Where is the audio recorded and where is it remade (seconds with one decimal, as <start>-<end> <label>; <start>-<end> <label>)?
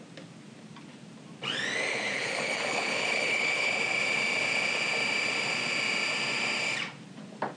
0.0-1.9 recorded; 1.9-3.7 remade; 3.7-7.6 recorded